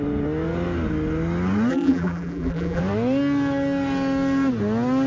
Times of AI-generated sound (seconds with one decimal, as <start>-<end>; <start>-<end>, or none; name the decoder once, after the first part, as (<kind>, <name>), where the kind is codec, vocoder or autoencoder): 1.7-2.8 (vocoder, BigVGAN v2)

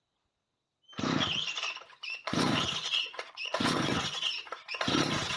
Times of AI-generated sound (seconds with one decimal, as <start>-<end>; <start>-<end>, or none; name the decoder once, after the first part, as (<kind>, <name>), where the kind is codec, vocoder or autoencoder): 1.9-4.2 (vocoder, Vocos)

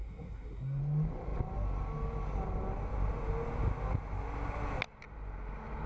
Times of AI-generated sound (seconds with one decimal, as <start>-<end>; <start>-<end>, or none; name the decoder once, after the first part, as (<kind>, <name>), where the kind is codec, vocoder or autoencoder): 0.0-0.8 (codec, SNAC)

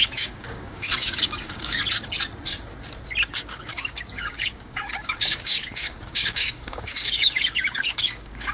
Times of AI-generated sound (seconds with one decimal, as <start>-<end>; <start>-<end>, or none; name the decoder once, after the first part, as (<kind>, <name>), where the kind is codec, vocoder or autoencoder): 0.0-1.8 (codec, DAC); 3.3-8.5

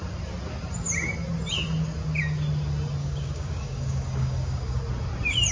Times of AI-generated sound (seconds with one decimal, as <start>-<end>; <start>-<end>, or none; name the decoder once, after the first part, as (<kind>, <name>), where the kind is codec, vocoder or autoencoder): 3.0-4.8 (codec, DAC)

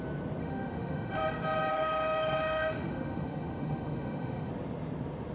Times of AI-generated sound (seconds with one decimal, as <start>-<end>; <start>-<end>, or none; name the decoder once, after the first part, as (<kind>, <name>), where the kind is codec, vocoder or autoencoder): 0.4-1.2 (autoencoder, DAC-VAE); 1.7-4.5